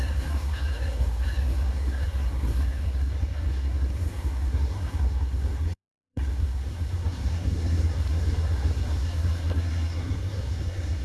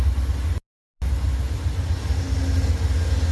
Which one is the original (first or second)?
second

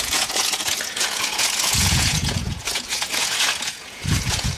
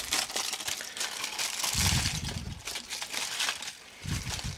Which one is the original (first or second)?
second